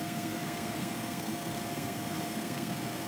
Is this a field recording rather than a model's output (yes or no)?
no